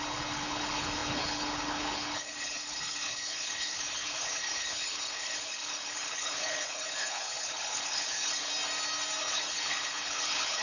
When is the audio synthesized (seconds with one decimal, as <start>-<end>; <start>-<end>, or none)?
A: 0.0-8.5; 9.2-10.6